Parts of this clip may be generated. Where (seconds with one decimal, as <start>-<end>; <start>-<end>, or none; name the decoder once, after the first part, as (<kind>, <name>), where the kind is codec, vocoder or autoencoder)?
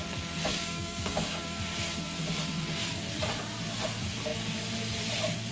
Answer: 0.5-1.6 (codec, DAC)